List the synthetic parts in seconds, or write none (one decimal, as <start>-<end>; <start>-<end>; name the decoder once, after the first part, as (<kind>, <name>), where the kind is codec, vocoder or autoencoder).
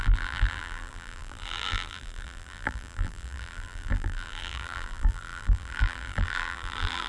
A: 0.0-7.1 (vocoder, BigVGAN v2)